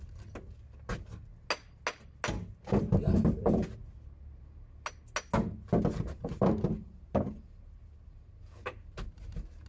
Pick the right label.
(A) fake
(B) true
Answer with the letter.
B